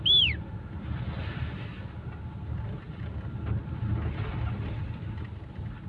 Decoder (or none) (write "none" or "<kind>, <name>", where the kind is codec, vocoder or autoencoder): none